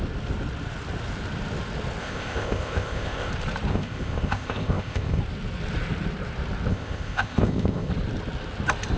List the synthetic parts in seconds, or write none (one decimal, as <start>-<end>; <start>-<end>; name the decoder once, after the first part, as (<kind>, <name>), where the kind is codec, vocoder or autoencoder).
2.0-3.3 (codec, ZipCodec); 3.7-5.2; 6.7-7.9